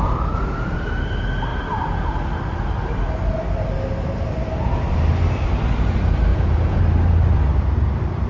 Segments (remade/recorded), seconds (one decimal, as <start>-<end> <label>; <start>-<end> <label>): 0.0-6.3 recorded; 6.3-6.8 remade; 6.8-8.3 recorded